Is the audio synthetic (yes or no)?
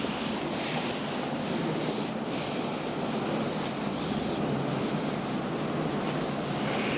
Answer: no